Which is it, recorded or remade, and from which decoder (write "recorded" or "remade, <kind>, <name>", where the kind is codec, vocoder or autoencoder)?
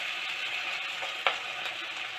recorded